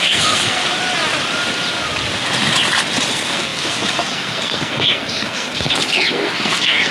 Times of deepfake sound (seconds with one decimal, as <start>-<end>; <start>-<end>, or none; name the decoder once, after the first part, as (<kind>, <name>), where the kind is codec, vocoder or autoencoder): 0.0-0.6 (codec, SNAC); 3.1-6.9

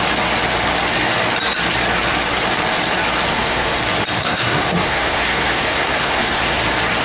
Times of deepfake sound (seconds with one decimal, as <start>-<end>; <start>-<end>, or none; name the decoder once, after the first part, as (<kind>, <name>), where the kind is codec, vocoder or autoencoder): 3.3-3.8 (codec, SNAC); 4.2-6.6

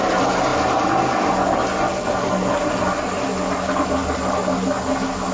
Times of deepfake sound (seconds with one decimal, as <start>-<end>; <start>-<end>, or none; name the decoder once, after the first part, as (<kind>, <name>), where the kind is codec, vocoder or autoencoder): none

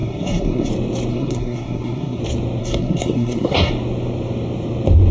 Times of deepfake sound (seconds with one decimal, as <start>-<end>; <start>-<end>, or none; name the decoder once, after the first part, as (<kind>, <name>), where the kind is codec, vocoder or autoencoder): 0.0-0.7 (codec, SNAC); 1.1-2.2; 2.6-3.7

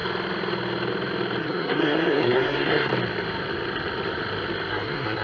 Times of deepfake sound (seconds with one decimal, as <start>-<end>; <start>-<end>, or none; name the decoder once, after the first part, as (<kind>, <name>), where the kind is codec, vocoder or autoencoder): 1.4-2.9 (codec, SNAC); 4.7-5.2

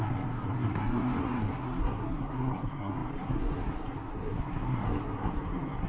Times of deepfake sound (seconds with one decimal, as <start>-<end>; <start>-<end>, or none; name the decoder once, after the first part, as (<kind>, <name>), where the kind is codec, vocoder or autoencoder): 0.0-5.9 (codec, SNAC)

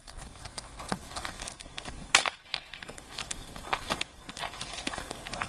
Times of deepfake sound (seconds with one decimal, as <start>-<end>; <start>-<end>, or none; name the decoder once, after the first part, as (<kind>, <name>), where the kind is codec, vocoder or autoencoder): 0.0-5.5 (codec, SNAC)

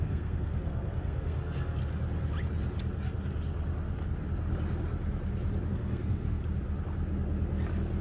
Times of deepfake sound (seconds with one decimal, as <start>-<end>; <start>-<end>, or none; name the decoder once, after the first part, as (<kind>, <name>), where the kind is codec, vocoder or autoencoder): 0.0-1.8 (codec, SNAC); 5.7-6.4